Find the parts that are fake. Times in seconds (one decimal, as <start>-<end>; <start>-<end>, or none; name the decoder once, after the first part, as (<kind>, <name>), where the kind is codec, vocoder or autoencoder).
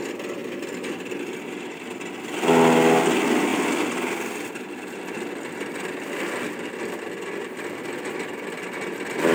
0.4-1.6 (vocoder, BigVGAN v2); 3.5-8.1